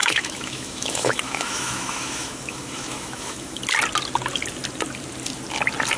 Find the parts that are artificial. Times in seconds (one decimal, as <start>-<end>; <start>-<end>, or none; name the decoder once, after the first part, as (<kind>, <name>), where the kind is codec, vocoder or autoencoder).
0.0-3.6 (autoencoder, DAC-VAE)